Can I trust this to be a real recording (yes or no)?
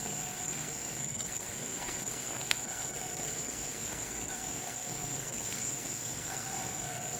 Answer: no